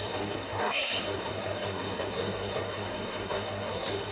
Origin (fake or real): fake